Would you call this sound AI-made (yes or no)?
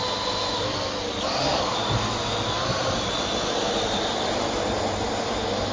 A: no